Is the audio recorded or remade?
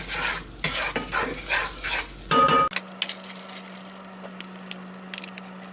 recorded